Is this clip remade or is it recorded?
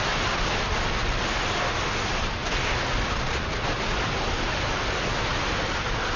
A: recorded